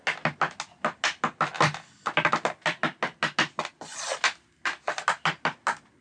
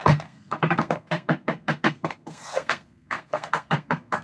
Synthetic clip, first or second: second